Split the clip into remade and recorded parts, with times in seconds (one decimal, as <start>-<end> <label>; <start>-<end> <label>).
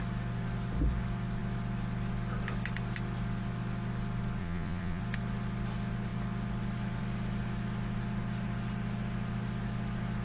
0.0-4.4 recorded; 4.4-5.0 remade; 5.0-10.2 recorded